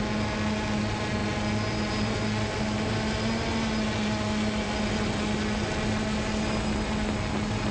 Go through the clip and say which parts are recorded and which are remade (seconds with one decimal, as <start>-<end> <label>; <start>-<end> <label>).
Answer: 0.0-7.7 recorded